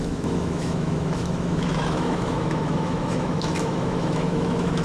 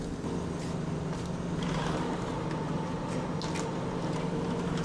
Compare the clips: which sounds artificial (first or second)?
first